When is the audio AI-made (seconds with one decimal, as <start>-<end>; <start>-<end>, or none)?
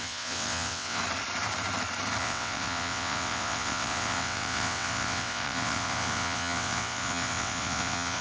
0.0-1.0; 2.2-8.2